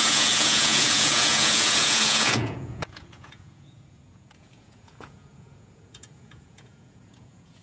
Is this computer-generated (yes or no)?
yes